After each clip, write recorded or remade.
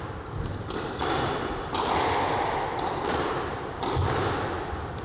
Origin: recorded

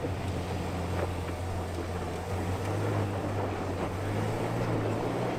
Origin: recorded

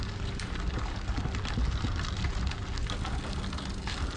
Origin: recorded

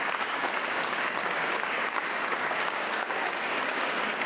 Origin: remade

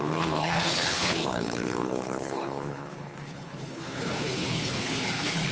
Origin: remade